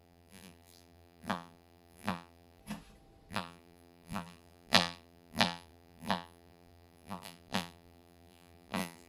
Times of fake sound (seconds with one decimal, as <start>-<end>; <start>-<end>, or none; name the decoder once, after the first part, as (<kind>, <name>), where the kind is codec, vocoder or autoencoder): 0.0-2.6 (vocoder, BigVGAN v2); 3.3-9.1